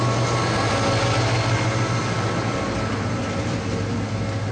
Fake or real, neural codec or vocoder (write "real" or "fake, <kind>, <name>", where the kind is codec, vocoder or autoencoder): real